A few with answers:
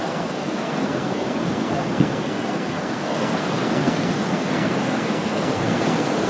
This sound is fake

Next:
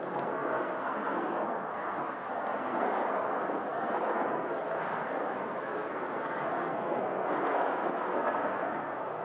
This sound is fake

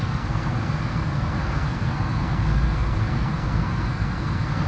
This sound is fake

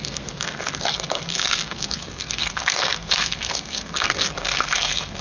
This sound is fake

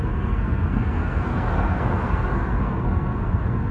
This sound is fake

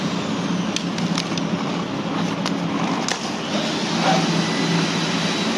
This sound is real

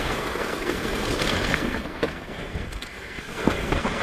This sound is fake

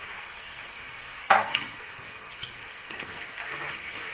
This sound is fake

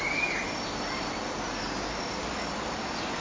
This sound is real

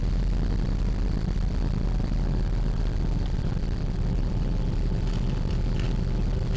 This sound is real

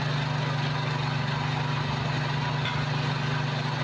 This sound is real